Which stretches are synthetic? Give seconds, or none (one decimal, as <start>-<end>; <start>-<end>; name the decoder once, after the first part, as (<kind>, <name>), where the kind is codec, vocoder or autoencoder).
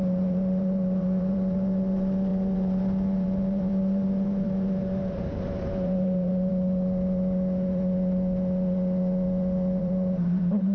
0.0-6.5 (vocoder, BigVGAN v2); 9.8-10.7